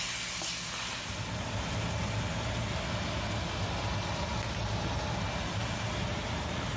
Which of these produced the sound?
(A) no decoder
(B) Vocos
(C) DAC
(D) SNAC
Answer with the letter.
A